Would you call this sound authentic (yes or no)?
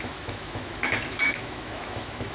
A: no